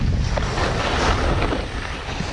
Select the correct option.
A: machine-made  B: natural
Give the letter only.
B